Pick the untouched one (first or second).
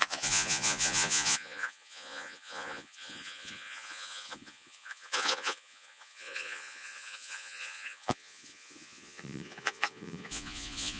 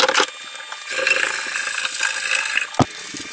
second